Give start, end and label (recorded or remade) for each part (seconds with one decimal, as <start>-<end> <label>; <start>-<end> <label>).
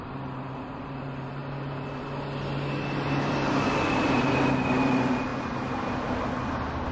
0.0-1.4 remade; 1.4-3.3 recorded; 3.3-5.3 remade; 5.3-6.9 recorded